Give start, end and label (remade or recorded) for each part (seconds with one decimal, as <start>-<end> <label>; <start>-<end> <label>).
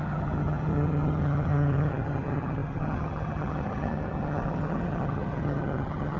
0.0-6.2 remade